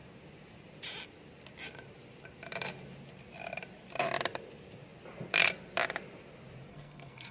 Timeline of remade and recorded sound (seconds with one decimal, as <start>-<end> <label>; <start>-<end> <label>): 0.0-6.7 recorded; 6.7-7.3 remade